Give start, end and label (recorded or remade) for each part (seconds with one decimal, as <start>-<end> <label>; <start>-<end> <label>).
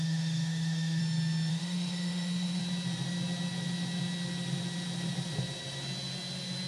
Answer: 0.0-1.0 remade; 1.0-1.5 recorded; 1.5-2.6 remade; 2.6-6.7 recorded